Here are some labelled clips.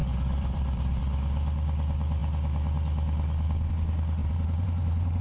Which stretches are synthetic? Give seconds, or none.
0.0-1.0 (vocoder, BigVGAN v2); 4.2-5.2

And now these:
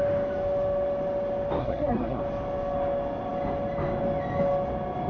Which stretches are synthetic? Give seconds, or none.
1.6-2.2 (codec, SNAC)

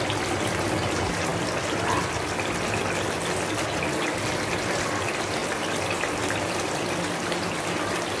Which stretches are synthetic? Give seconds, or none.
none

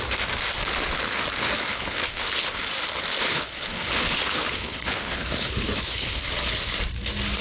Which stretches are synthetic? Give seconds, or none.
1.7-2.6 (codec, HILCodec); 3.2-6.2

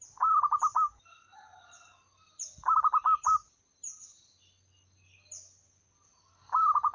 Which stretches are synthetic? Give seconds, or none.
none

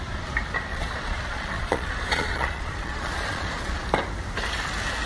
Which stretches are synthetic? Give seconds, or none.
0.7-3.8 (vocoder, Vocos)

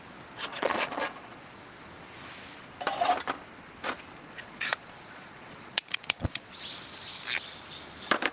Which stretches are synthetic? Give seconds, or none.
0.5-1.5 (vocoder, Vocos); 4.2-6.6

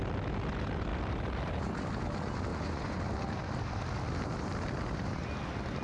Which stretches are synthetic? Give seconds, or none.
2.5-3.0 (vocoder, Vocos)